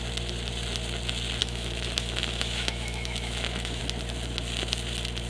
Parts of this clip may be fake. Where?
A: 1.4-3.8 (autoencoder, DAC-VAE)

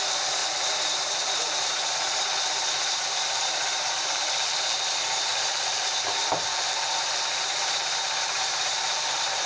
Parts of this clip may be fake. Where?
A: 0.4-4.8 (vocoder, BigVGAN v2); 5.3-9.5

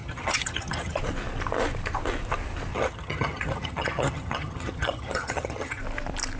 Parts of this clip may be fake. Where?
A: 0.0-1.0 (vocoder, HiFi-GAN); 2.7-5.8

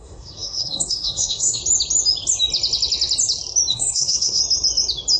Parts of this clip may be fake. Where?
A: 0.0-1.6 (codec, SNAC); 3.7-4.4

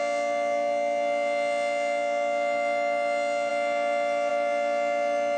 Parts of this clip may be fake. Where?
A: none

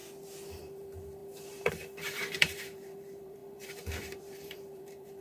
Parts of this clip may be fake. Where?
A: 0.5-5.2 (vocoder, BigVGAN v2)

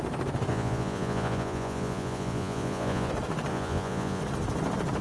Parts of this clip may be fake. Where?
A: 0.5-3.1 (vocoder, Vocos); 3.5-4.2